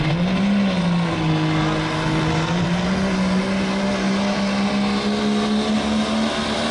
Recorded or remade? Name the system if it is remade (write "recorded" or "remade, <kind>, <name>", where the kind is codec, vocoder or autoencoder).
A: recorded